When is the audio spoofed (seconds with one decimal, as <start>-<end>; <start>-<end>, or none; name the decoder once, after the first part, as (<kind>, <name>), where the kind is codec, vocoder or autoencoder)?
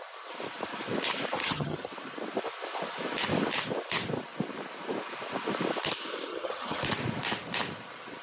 1.4-1.9 (vocoder, HiFi-GAN); 6.3-6.8